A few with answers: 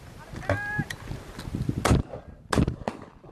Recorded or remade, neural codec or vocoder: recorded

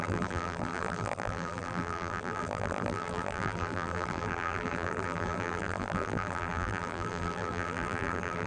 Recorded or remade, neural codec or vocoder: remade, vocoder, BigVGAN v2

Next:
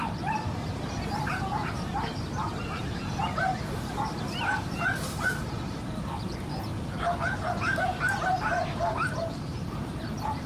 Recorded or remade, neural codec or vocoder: remade, vocoder, BigVGAN v2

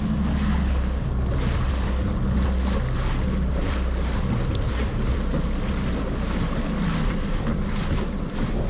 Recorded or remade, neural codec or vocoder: recorded